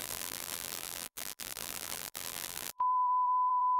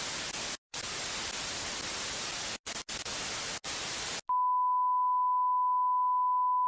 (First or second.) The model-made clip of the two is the first